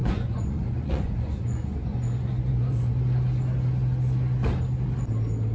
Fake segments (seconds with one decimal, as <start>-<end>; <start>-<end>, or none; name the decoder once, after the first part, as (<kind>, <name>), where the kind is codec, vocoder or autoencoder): 0.0-2.9 (vocoder, Vocos)